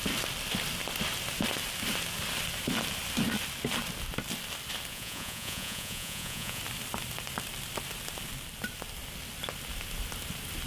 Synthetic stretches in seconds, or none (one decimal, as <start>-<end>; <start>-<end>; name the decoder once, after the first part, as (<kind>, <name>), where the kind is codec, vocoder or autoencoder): 4.9-6.6 (vocoder, Vocos)